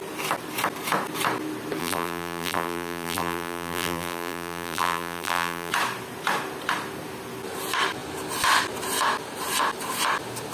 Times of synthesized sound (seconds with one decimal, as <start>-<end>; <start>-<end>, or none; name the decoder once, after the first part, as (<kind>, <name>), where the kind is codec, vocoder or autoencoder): 1.8-5.7 (vocoder, BigVGAN v2)